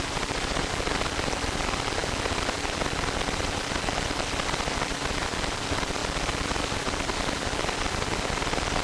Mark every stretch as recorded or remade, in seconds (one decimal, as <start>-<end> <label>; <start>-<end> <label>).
0.0-6.0 remade; 6.0-6.6 recorded; 6.6-8.8 remade